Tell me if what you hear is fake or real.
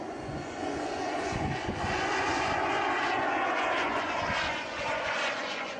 fake